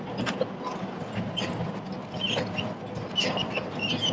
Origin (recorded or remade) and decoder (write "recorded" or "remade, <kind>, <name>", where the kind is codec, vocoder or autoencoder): recorded